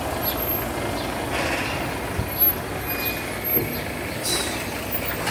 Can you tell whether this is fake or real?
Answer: real